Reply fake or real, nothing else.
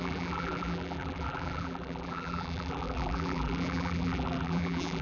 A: fake